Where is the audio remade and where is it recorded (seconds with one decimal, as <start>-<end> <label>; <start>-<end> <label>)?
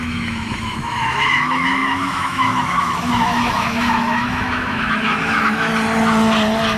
0.0-5.7 remade; 5.7-6.8 recorded